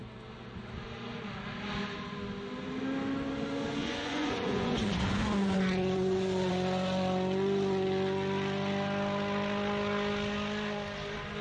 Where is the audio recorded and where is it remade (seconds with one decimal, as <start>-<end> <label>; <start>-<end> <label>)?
0.0-3.8 recorded; 3.8-6.5 remade; 6.5-11.4 recorded